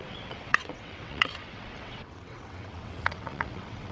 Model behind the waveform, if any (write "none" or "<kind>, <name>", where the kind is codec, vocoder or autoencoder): vocoder, WaveNeXt